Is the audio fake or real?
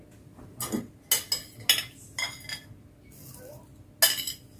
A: real